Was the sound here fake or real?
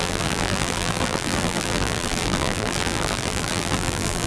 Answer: fake